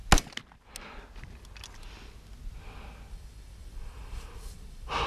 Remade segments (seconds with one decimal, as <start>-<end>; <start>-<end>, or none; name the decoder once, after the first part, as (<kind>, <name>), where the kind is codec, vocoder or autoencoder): 3.1-5.1 (vocoder, BigVGAN v2)